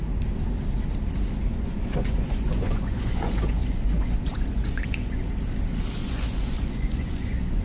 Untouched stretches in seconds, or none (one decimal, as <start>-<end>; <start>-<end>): 0.0-1.5; 5.2-6.0